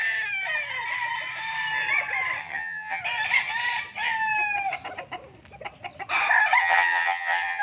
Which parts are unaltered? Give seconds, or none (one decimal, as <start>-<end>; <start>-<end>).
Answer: 0.0-2.4; 3.0-6.6